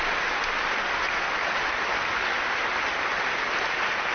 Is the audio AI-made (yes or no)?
no